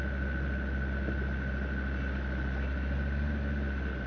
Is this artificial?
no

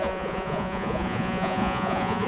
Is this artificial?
yes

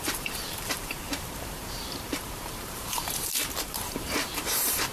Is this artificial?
yes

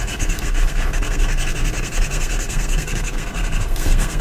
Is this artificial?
yes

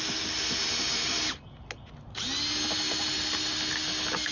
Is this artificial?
no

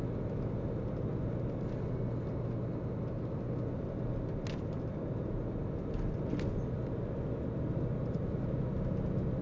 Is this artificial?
no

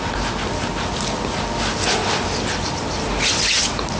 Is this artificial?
no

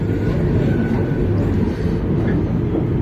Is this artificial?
no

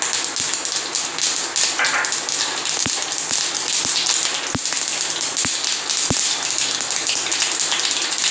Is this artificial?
no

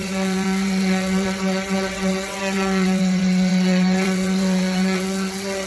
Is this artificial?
yes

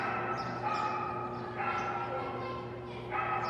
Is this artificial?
no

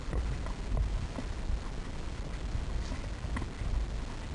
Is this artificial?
no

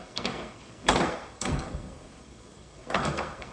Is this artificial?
yes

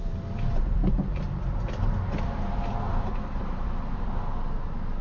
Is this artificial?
no